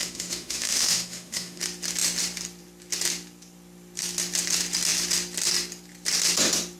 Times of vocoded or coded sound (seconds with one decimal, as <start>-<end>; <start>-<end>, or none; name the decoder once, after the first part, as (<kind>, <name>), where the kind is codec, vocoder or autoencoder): 0.0-1.6 (autoencoder, DAC-VAE)